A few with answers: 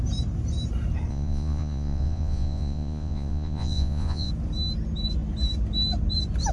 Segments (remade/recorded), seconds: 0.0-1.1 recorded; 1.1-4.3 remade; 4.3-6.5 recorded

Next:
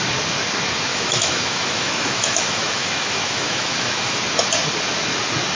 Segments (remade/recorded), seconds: 0.0-0.9 recorded; 0.9-4.2 remade; 4.2-5.5 recorded

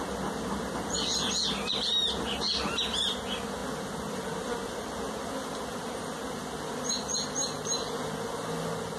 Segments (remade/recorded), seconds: 0.0-9.0 recorded